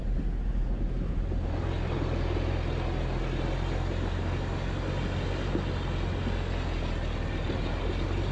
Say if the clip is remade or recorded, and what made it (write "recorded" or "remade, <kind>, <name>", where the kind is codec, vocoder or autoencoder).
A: recorded